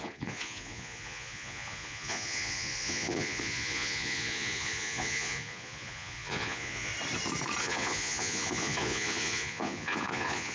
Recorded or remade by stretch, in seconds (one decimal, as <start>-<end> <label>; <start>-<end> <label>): 0.0-6.9 remade; 6.9-7.6 recorded; 7.6-10.5 remade